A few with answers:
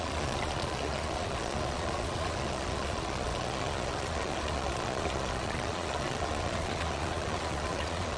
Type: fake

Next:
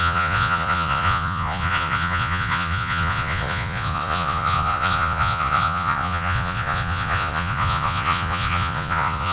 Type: fake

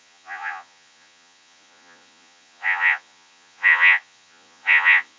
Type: fake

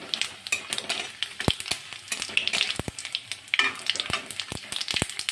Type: real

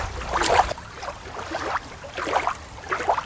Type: real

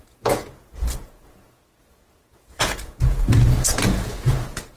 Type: fake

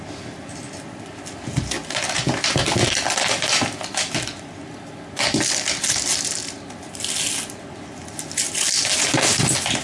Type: real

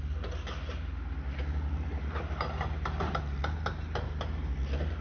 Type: real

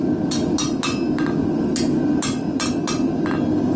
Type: real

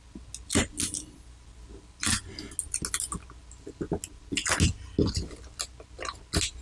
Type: real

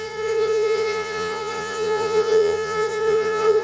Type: fake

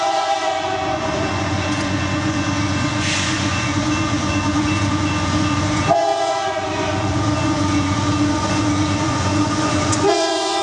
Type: fake